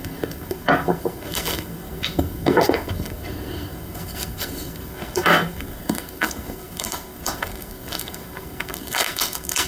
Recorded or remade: remade